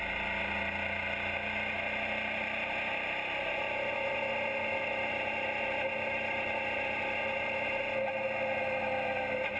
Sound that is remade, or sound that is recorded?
recorded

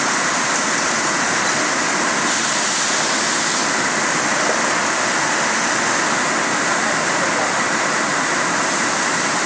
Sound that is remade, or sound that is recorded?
recorded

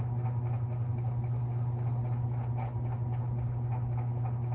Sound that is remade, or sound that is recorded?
recorded